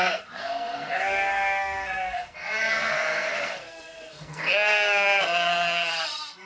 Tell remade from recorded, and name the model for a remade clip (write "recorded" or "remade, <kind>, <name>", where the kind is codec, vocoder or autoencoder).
remade, codec, SNAC